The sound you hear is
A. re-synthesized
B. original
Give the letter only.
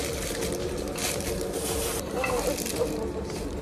B